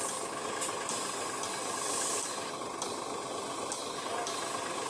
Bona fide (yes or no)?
yes